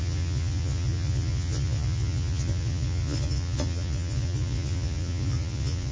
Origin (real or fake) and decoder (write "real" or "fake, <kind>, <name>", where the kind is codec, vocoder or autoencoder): fake, vocoder, Vocos